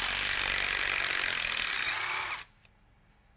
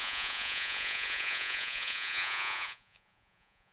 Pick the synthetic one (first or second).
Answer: second